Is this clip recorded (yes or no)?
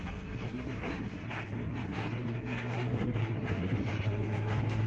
no